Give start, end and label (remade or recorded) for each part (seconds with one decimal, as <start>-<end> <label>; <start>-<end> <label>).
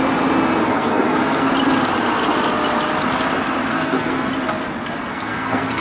0.0-0.7 recorded; 0.7-1.5 remade; 1.5-3.7 recorded; 3.7-4.3 remade; 4.3-5.1 recorded; 5.1-5.8 remade